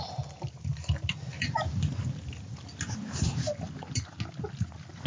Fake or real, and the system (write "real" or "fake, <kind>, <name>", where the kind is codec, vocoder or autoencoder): real